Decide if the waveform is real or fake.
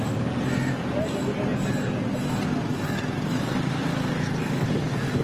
real